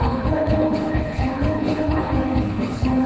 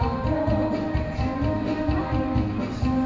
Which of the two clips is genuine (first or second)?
second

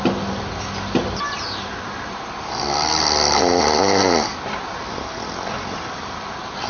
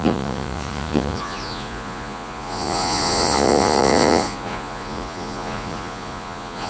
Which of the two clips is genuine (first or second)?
first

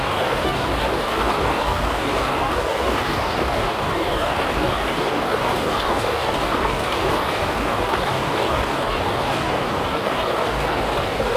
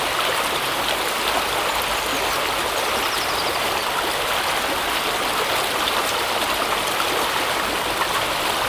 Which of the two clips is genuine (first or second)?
second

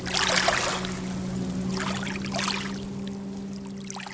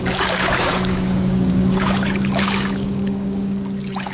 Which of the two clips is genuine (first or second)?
first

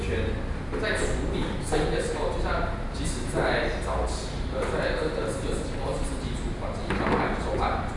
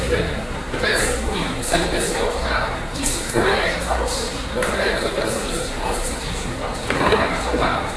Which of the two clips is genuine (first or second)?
first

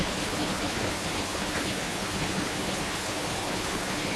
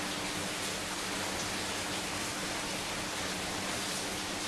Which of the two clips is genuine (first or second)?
second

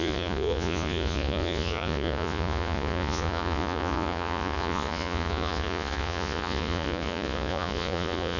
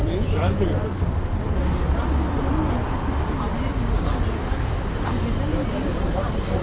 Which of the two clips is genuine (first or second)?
second